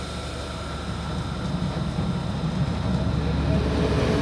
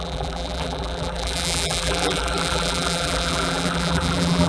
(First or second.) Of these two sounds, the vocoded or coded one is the second